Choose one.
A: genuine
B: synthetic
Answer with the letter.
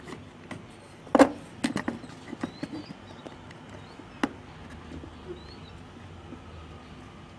A